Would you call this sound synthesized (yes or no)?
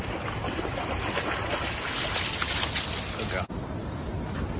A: no